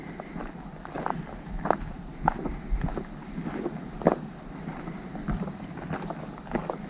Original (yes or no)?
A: yes